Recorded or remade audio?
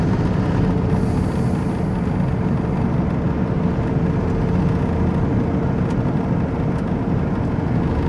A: recorded